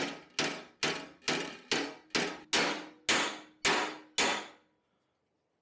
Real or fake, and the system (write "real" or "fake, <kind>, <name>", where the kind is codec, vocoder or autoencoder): real